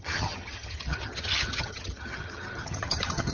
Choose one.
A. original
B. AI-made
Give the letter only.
B